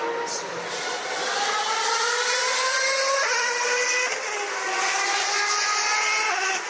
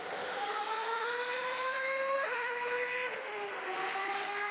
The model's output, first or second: second